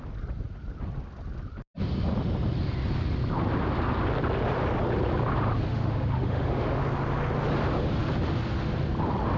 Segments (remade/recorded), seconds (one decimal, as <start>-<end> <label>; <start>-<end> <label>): 0.0-5.7 recorded; 5.7-6.8 remade; 6.8-9.4 recorded